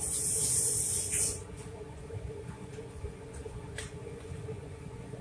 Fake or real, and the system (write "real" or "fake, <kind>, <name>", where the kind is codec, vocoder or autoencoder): fake, vocoder, Vocos